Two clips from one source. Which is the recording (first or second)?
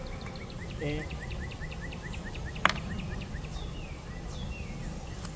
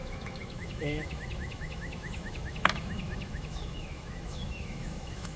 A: first